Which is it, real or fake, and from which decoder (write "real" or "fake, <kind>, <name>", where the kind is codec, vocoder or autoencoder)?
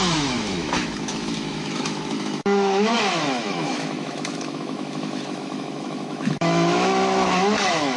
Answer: fake, autoencoder, DAC-VAE